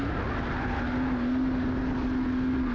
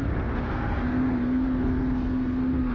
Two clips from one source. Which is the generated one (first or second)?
second